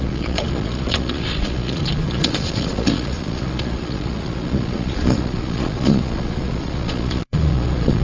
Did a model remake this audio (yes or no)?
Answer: yes